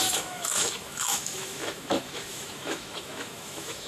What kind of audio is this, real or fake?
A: fake